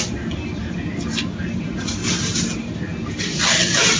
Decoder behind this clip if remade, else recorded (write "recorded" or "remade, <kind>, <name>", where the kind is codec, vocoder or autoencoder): recorded